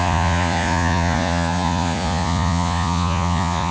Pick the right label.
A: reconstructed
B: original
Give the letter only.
A